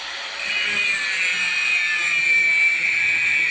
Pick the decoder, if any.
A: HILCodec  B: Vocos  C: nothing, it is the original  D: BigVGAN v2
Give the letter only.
D